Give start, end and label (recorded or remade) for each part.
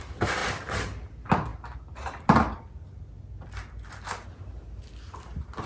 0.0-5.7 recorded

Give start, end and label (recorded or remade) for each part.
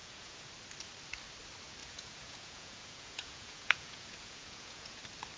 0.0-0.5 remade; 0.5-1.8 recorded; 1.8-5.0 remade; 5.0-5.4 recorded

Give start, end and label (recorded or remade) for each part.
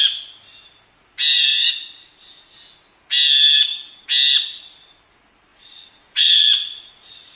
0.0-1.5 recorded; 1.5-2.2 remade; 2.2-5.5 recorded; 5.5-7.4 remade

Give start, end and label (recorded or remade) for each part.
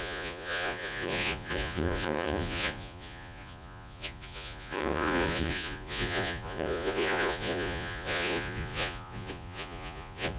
0.0-10.4 remade